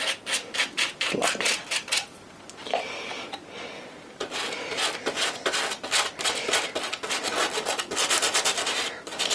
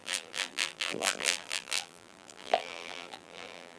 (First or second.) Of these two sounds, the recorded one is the first